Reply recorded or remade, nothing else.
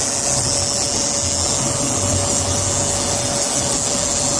recorded